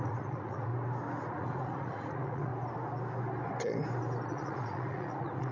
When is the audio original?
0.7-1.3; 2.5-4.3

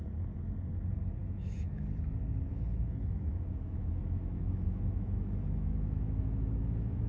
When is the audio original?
0.0-1.2; 1.8-2.5

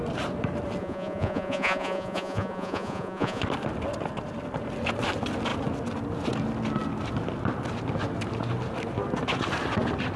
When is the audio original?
0.0-0.8; 3.4-10.2

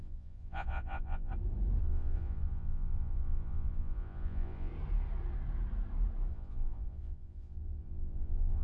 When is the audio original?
1.3-1.8; 4.7-6.3

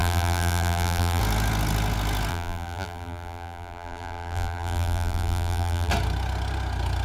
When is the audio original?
1.2-2.3; 5.9-7.0

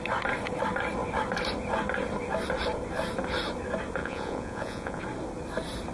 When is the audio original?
0.0-4.0; 5.0-5.9

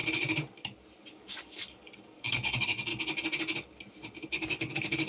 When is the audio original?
0.0-1.0; 2.9-4.3

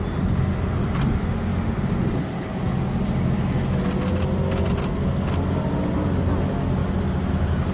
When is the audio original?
0.0-7.7